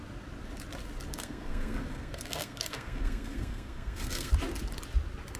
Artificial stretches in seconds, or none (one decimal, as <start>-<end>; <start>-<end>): 1.1-4.3